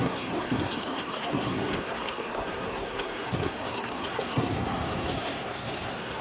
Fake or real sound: fake